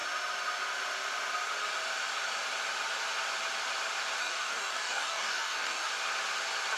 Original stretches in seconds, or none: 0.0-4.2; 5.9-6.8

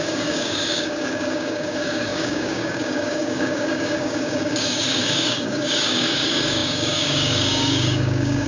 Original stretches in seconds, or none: none

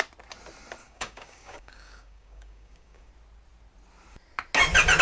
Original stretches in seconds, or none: 0.0-0.8; 3.1-5.0

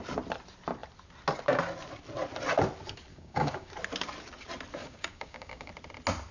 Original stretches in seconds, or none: 0.0-3.1; 3.7-4.8; 5.7-6.3

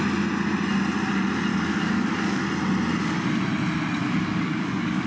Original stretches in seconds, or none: 0.0-1.5; 2.4-4.0

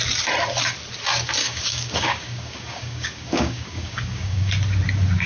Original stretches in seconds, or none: 0.0-1.4; 4.5-5.3